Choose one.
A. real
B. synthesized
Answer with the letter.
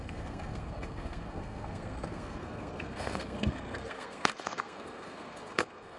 B